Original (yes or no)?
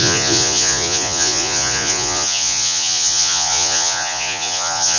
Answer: no